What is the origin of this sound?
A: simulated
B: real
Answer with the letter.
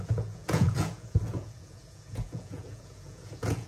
A